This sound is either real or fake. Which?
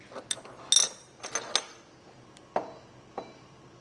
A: real